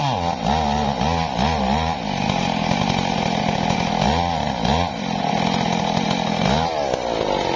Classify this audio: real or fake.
real